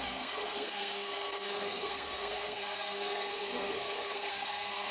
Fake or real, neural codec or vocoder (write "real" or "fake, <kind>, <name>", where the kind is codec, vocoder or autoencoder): fake, codec, SNAC